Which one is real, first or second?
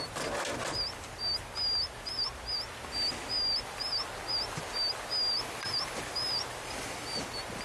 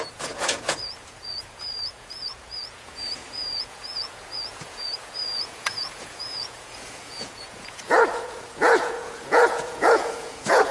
first